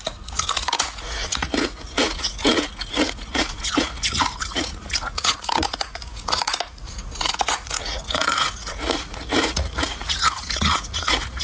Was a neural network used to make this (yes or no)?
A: yes